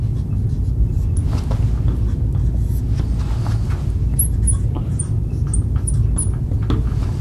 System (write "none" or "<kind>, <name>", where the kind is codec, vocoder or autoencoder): none